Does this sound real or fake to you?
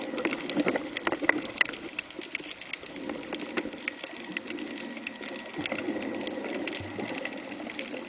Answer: real